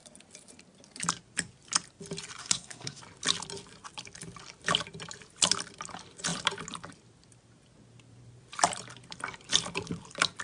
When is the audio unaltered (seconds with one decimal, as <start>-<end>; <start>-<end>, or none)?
0.0-2.4; 3.0-10.4